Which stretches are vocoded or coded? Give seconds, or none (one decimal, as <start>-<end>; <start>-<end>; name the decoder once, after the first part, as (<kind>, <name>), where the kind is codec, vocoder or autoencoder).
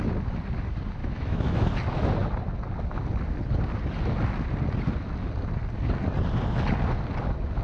1.0-1.7 (autoencoder, DAC-VAE)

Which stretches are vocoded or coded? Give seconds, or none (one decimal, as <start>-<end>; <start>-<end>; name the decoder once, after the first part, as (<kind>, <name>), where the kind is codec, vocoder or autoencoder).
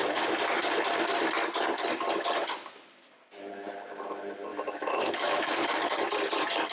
4.5-5.5 (autoencoder, DAC-VAE)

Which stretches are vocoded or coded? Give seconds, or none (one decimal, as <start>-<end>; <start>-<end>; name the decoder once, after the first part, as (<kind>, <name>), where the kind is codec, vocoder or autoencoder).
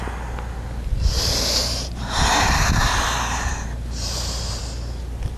1.6-4.6 (vocoder, BigVGAN v2)